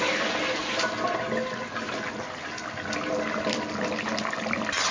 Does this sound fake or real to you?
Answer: real